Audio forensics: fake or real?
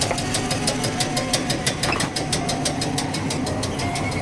real